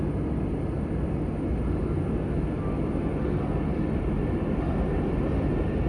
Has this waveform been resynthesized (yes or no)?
no